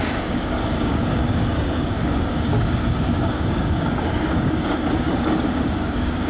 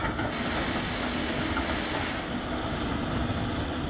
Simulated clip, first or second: first